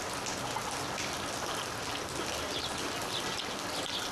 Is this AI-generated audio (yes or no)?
no